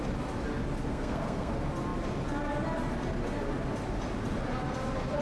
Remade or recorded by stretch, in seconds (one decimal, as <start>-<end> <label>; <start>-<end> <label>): 0.0-0.9 recorded; 0.9-1.5 remade; 1.5-5.2 recorded